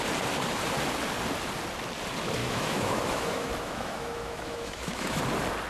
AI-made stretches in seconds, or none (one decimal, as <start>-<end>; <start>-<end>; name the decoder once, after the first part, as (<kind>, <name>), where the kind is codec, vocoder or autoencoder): 2.4-5.2 (autoencoder, DAC-VAE)